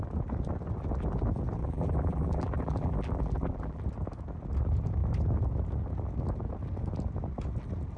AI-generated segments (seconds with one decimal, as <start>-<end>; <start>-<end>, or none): 1.6-3.8